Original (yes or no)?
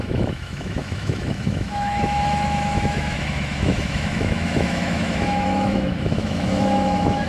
no